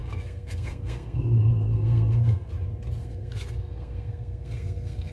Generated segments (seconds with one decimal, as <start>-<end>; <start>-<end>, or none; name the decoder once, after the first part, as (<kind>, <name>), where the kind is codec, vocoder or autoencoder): 0.0-2.5 (codec, SNAC); 3.0-5.1